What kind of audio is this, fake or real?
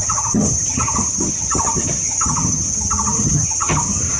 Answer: fake